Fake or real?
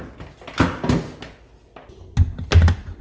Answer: real